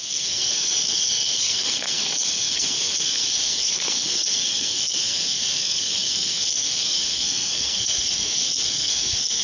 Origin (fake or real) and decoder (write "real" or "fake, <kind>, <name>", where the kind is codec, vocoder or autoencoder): fake, codec, SNAC